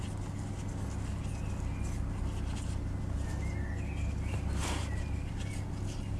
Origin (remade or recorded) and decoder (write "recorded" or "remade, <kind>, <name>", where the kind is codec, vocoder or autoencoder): recorded